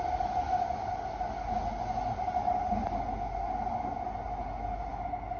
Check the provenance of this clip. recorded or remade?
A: recorded